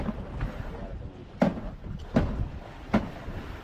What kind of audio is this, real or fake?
real